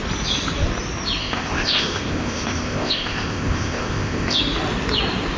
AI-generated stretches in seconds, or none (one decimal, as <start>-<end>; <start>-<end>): 1.2-4.4